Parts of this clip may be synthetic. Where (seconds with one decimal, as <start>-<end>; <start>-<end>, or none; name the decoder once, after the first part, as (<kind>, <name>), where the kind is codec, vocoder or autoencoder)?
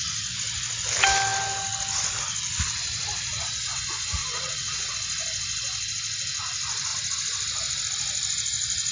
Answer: 4.2-4.9 (vocoder, WaveNeXt)